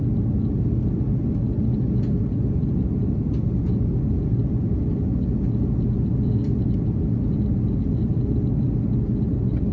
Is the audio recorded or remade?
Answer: recorded